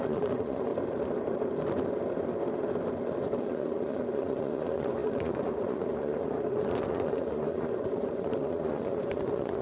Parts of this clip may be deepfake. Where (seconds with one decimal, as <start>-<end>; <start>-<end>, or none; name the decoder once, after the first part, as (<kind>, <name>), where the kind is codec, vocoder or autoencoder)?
0.0-0.7 (vocoder, Vocos); 3.4-9.6